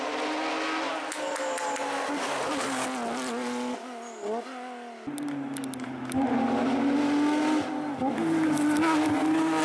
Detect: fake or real real